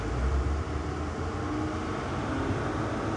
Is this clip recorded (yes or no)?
yes